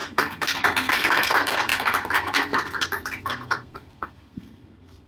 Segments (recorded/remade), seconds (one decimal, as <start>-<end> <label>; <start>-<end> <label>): 0.0-5.1 remade